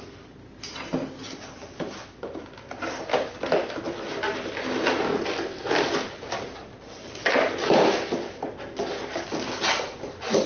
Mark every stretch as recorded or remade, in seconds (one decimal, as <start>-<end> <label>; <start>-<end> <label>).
0.0-10.5 recorded